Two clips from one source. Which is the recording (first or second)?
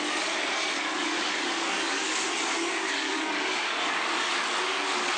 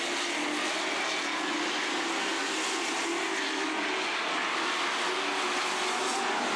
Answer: second